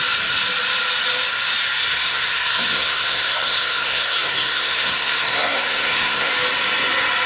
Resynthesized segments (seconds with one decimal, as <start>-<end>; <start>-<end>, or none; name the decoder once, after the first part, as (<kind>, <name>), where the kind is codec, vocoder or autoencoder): 1.9-6.3 (codec, SNAC)